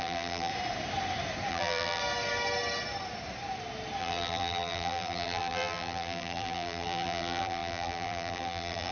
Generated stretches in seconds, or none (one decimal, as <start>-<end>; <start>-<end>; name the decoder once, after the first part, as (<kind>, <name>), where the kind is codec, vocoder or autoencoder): 0.0-0.5 (vocoder, BigVGAN v2); 1.5-2.0; 4.0-8.9